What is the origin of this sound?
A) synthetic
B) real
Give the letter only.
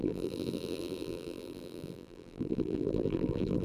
A